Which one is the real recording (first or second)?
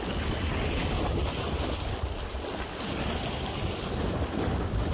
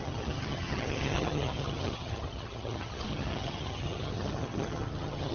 first